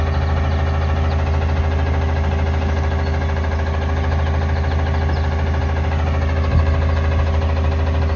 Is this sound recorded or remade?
recorded